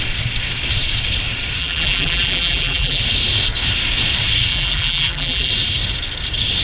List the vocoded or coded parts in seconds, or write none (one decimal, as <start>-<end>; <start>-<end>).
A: 1.6-3.0; 4.5-5.5

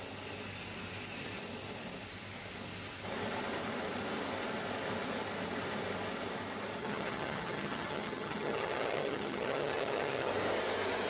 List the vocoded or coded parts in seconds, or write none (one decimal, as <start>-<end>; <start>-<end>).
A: 6.8-10.3